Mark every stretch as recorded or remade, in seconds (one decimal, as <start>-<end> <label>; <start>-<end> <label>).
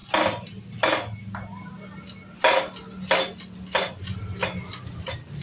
0.0-5.4 recorded